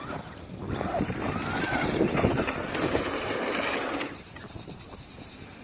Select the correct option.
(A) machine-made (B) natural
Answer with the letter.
A